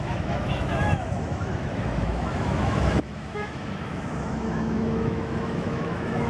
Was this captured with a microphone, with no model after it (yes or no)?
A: no